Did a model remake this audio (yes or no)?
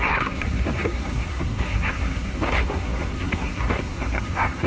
yes